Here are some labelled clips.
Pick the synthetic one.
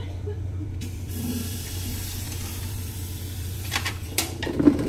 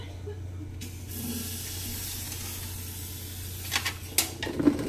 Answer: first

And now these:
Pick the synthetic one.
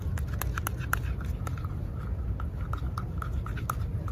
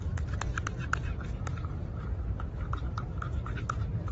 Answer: second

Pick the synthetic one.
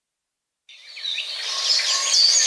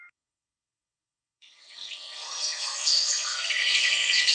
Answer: second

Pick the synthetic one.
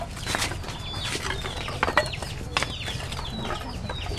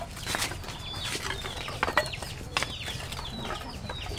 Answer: second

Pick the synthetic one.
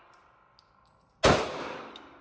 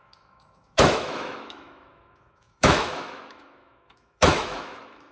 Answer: second